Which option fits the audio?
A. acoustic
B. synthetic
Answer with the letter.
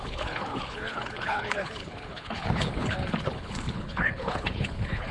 B